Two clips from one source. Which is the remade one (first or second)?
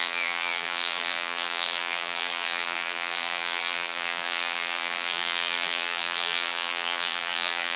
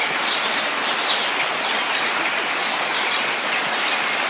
first